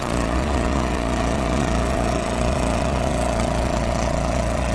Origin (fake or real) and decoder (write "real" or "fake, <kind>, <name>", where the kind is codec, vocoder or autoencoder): fake, vocoder, Vocos